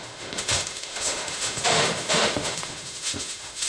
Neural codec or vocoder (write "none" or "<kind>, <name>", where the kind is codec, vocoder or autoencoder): autoencoder, DAC-VAE